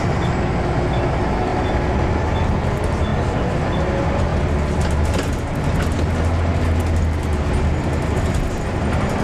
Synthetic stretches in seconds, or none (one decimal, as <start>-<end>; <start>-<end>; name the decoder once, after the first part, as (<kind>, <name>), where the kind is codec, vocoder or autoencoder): none